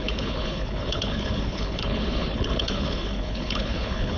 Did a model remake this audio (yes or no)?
yes